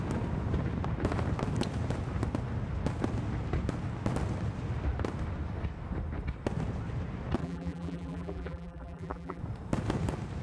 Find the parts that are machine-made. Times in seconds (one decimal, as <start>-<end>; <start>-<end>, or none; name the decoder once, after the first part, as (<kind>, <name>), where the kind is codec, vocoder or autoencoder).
7.4-9.4 (vocoder, BigVGAN v2)